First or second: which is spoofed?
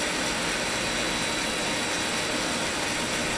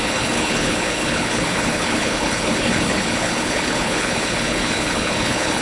second